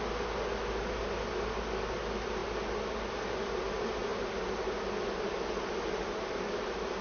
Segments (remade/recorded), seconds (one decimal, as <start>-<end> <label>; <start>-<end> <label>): 0.0-7.0 recorded